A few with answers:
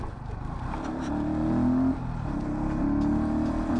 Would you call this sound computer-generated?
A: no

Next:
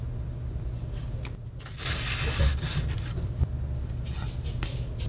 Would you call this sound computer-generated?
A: no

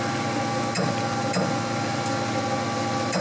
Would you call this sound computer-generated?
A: no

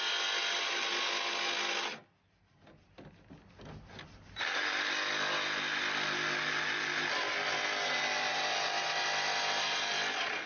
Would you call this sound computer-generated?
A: no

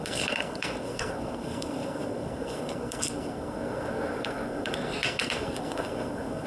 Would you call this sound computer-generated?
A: yes